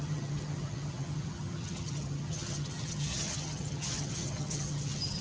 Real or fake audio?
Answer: fake